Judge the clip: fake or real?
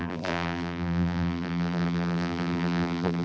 fake